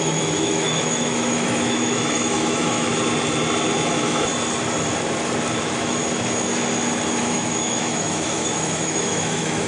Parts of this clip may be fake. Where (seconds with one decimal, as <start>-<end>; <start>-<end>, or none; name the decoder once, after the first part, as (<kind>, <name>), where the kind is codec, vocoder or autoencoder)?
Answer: 0.0-2.9 (autoencoder, DAC-VAE); 3.9-4.3; 5.6-6.0; 7.2-9.7